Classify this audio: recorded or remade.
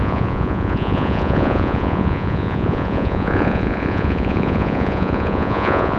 remade